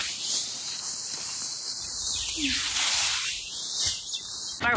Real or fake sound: real